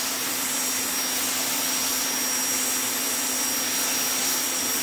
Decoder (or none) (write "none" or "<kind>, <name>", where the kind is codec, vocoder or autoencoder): none